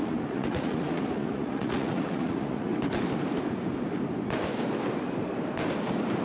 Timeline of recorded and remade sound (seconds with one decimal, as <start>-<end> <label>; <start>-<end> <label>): 0.0-2.7 remade; 2.7-6.2 recorded